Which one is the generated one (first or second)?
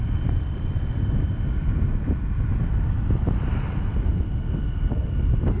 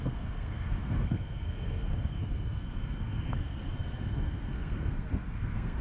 second